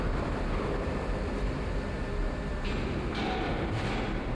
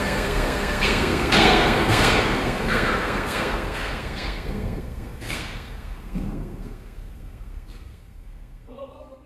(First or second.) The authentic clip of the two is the first